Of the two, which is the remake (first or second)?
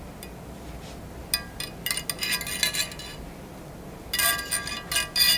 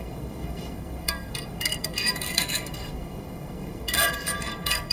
second